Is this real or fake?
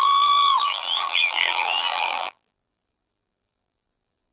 fake